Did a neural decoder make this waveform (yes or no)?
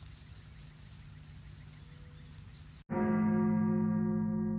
no